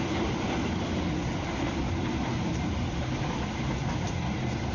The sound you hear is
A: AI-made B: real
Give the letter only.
B